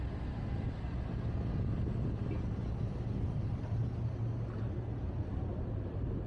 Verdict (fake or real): real